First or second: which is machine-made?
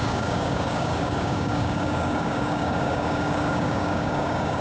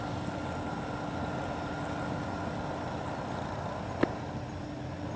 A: first